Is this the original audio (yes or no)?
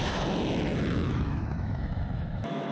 no